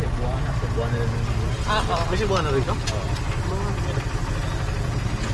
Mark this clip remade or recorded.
recorded